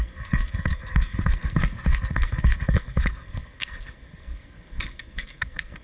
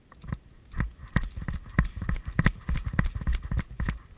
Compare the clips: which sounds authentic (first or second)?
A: second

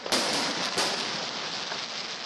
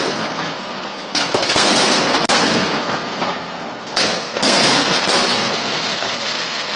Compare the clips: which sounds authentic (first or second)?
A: first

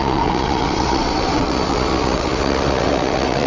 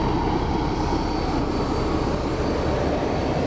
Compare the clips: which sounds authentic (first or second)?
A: second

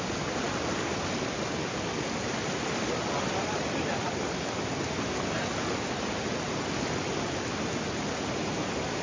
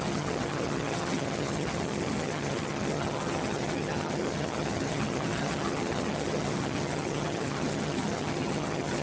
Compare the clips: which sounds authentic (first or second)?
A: first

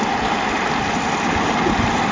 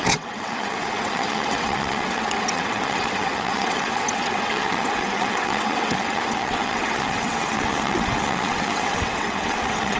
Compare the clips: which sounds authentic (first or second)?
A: first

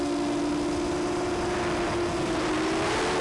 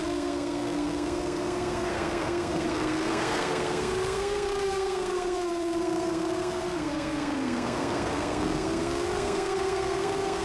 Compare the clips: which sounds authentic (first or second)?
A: first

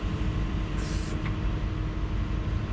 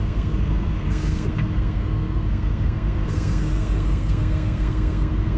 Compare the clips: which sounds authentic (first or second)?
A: first